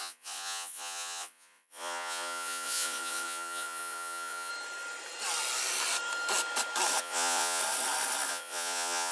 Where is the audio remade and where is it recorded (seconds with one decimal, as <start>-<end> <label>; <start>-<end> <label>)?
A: 0.0-4.5 remade; 4.5-7.0 recorded; 7.0-7.6 remade; 7.6-8.3 recorded; 8.3-9.1 remade